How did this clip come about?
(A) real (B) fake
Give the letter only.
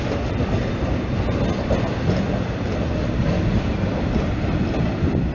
A